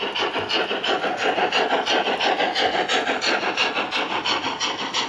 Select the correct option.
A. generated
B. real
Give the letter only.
B